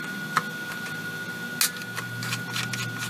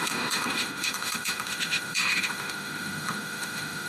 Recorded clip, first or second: first